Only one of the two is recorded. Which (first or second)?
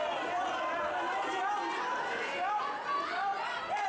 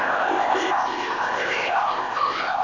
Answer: first